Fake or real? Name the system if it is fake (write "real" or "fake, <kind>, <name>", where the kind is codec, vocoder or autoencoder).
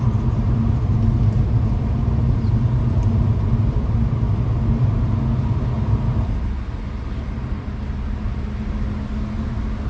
real